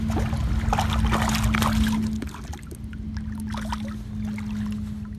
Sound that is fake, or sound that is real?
real